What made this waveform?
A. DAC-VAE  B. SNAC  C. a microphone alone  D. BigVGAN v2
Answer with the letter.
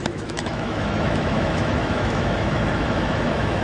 A